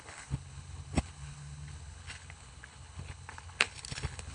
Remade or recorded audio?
remade